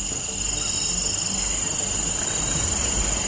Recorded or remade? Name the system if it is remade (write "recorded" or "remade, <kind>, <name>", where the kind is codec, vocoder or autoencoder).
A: recorded